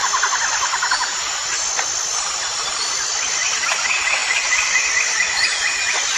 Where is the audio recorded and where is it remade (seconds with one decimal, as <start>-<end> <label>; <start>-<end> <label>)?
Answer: 0.0-2.1 recorded; 2.1-3.5 remade; 3.5-4.2 recorded; 4.2-4.8 remade; 4.8-6.2 recorded